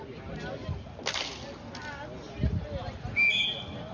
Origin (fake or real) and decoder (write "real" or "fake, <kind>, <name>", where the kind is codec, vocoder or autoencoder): real